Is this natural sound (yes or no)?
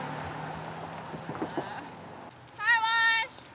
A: yes